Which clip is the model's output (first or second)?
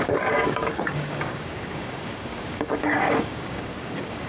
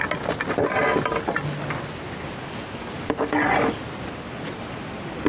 first